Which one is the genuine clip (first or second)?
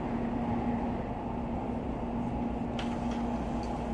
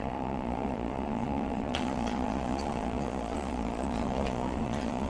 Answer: first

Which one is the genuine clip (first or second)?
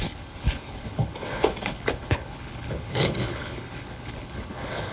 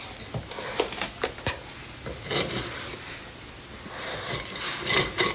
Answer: second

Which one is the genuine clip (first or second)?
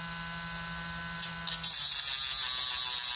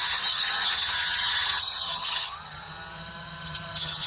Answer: first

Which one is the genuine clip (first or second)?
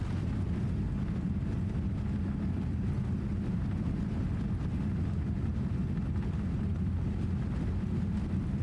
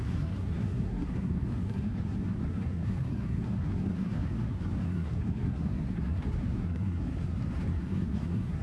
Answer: first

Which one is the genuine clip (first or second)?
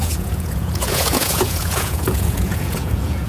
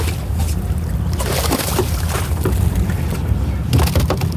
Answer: second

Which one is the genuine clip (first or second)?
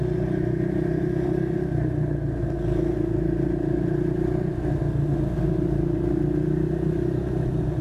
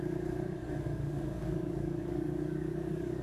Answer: first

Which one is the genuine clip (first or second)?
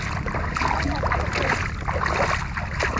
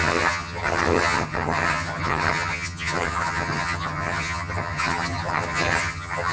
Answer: first